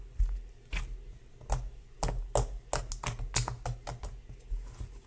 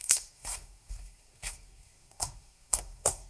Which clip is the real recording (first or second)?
first